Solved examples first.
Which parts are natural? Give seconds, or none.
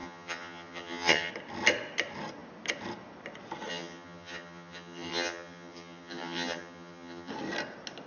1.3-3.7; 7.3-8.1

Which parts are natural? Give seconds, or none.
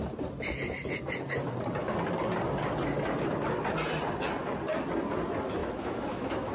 0.0-5.6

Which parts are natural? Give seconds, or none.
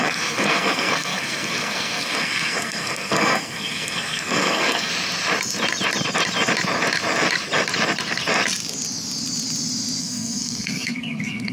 4.9-10.0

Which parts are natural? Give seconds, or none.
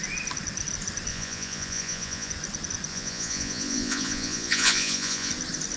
0.0-1.1; 2.3-2.9; 5.3-5.8